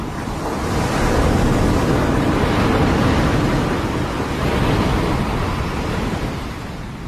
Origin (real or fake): real